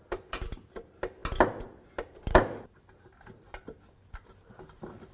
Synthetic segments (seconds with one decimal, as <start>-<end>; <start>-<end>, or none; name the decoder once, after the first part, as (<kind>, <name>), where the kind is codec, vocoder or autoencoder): none